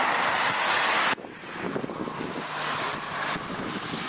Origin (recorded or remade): recorded